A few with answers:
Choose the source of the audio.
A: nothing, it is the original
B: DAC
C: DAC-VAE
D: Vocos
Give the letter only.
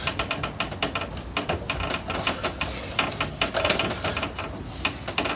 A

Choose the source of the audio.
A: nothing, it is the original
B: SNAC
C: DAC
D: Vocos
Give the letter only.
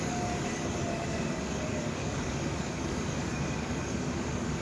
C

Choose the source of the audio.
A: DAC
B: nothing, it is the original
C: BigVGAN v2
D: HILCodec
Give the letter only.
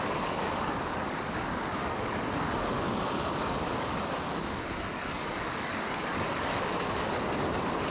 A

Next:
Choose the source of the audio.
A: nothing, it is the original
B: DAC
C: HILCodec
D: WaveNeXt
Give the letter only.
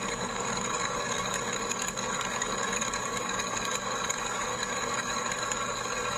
B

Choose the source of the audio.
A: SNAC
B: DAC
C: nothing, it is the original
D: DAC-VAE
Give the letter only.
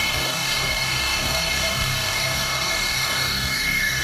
B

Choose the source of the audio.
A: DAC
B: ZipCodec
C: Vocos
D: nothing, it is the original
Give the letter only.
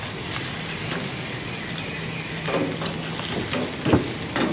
D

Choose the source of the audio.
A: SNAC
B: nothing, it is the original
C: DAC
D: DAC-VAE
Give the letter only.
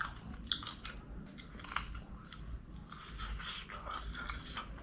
B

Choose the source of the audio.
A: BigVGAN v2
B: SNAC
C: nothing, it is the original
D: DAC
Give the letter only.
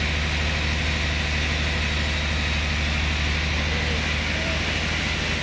C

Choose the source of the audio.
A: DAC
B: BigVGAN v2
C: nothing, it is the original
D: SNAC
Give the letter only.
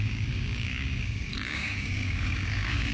A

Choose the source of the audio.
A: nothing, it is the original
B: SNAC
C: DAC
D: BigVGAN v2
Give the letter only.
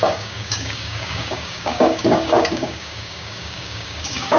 C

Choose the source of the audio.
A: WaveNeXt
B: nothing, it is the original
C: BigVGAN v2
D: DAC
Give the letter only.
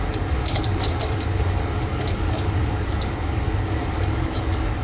D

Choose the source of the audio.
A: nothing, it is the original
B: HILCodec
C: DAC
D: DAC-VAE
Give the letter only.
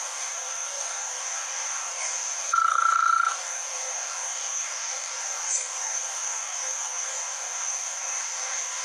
C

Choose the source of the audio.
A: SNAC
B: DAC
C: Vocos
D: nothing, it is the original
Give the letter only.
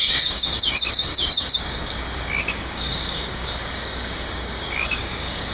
B